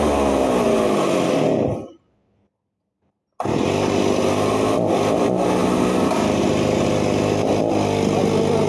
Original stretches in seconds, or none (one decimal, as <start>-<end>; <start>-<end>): 0.0-8.7